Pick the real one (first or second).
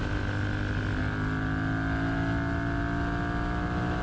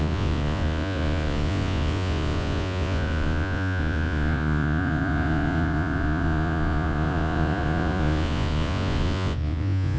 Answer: first